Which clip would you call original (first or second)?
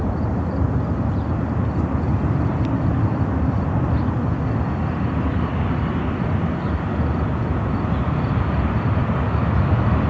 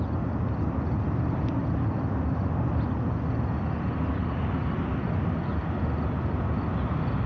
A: second